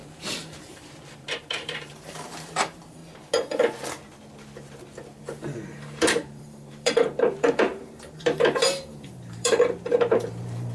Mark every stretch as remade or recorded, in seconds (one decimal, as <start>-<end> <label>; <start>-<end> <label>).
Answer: 0.0-3.0 remade; 3.0-5.2 recorded; 5.2-10.7 remade